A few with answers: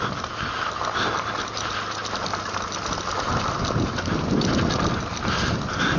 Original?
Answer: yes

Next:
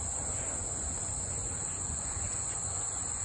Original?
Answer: no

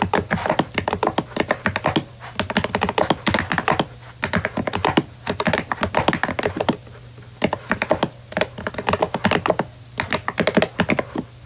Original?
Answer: yes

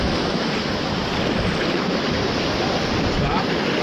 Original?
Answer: yes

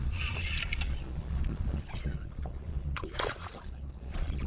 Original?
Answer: no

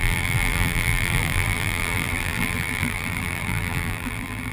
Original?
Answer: no